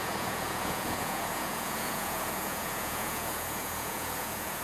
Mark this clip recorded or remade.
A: remade